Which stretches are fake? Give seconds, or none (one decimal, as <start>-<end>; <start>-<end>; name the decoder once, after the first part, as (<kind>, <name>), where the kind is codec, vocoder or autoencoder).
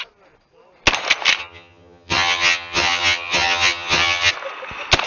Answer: 1.4-4.3 (vocoder, HiFi-GAN)